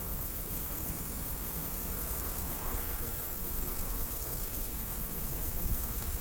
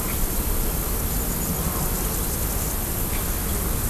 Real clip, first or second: second